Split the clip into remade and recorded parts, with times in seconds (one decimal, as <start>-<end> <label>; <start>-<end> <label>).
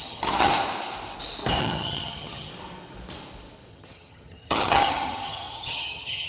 0.0-0.5 remade; 0.5-1.6 recorded; 1.6-2.5 remade; 2.5-3.7 recorded; 3.7-6.3 remade